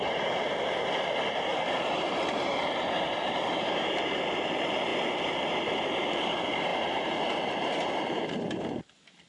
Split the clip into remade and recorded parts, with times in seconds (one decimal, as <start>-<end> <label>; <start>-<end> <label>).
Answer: 0.0-4.9 remade; 4.9-5.4 recorded; 5.4-9.3 remade